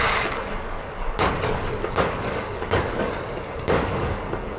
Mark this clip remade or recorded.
remade